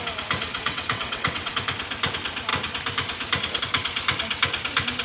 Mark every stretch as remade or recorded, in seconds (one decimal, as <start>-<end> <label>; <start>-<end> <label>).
0.0-0.5 recorded; 0.5-1.5 remade; 1.5-5.0 recorded